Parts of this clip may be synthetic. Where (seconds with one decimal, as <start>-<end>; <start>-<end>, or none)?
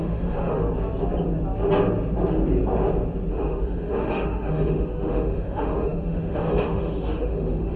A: 0.0-0.6; 3.3-7.8